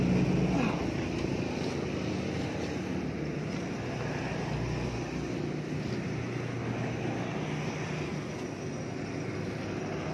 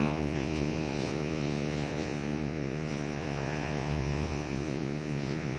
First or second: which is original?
first